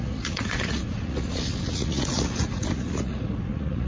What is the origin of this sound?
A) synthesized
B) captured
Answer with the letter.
A